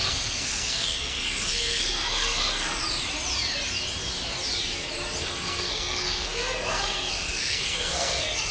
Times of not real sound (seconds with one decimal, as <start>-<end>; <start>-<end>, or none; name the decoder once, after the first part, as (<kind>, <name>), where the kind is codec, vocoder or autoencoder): 0.0-2.8 (codec, SNAC); 5.2-8.5